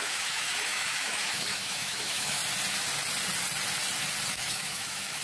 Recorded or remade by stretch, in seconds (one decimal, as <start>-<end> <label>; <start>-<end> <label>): 0.0-2.4 remade; 2.4-4.3 recorded; 4.3-5.2 remade